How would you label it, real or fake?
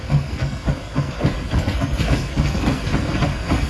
fake